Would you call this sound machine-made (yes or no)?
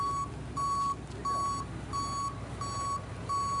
no